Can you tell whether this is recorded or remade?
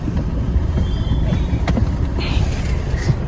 recorded